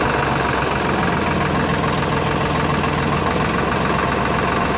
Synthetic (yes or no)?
no